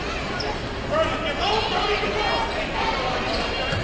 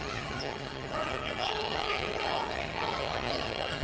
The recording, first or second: first